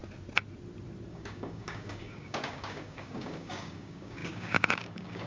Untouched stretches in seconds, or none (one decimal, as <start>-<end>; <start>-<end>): 0.0-1.1